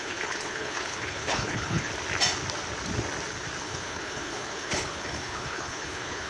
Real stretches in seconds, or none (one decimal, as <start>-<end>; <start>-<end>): 1.9-3.6